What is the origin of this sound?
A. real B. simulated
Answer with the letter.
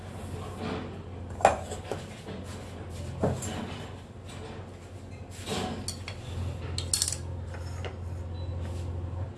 A